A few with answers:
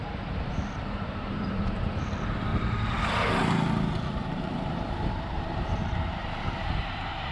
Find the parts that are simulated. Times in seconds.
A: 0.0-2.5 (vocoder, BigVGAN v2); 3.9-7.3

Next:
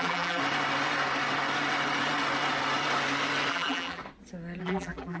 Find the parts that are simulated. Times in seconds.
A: 0.0-0.4 (vocoder, BigVGAN v2); 3.5-4.0; 4.6-5.2

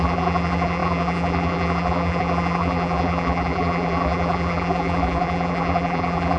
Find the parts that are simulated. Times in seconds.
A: 0.0-6.4 (vocoder, BigVGAN v2)

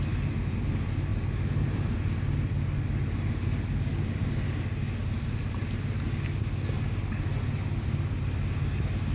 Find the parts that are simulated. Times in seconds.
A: 1.1-2.0 (vocoder, BigVGAN v2); 5.0-5.6

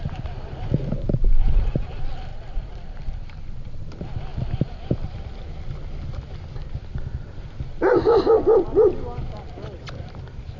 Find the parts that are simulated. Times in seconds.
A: 2.3-3.4 (vocoder, BigVGAN v2)

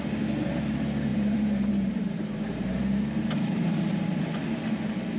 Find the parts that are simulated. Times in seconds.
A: 1.1-4.2 (vocoder, BigVGAN v2)

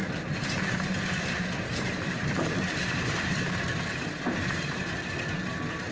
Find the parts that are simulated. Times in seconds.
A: 0.0-3.5 (vocoder, BigVGAN v2); 3.9-4.8

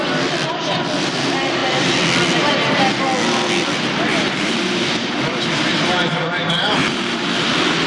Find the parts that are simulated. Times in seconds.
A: 4.1-7.3 (vocoder, BigVGAN v2)